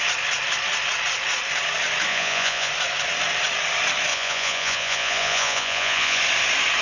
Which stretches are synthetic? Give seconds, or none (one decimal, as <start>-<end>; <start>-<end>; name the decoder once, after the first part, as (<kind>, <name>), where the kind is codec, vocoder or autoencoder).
2.1-2.7 (vocoder, Vocos); 4.1-6.2